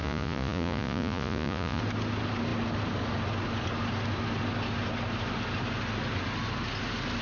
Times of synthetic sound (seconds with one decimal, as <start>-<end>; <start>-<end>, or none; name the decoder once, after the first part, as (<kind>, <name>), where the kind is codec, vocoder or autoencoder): 0.0-1.8 (vocoder, Vocos)